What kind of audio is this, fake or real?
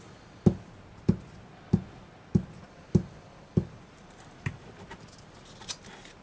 real